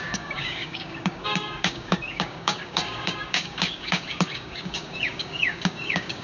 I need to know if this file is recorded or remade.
remade